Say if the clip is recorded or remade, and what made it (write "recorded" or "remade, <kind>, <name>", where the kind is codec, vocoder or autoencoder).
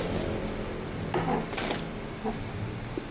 recorded